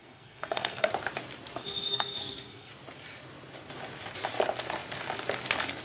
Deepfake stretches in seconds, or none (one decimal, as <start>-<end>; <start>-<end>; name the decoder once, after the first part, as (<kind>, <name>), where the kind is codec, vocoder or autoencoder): 0.0-0.9 (codec, SNAC); 1.6-2.7